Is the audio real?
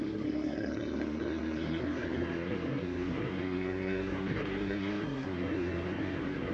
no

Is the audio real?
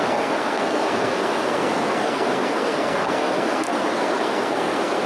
no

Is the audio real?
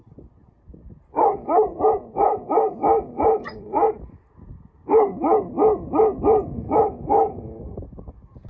yes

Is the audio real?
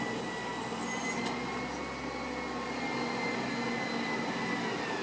yes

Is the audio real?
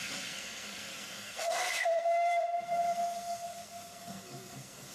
no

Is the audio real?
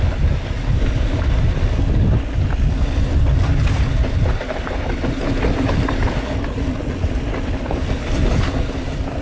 yes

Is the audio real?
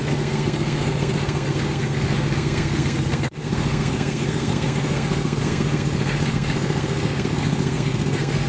no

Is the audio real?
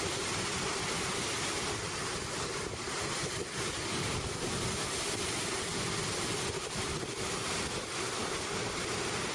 yes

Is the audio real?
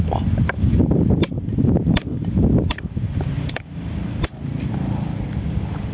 yes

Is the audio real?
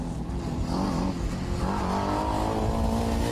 yes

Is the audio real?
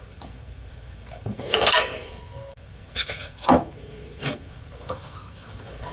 no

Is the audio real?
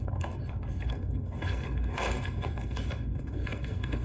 no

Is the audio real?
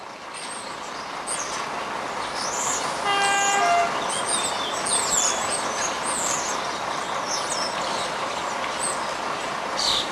yes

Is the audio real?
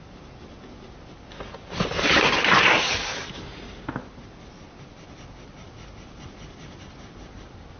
yes